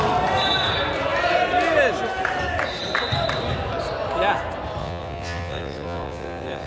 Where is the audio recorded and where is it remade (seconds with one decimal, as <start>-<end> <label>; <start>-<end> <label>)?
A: 0.0-4.8 recorded; 4.8-6.7 remade